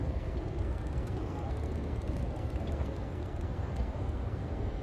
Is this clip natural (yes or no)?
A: no